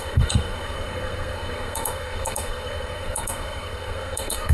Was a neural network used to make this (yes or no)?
yes